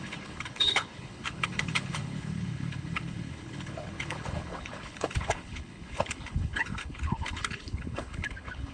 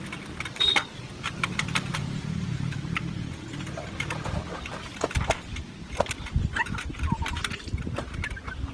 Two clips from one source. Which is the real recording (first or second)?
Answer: second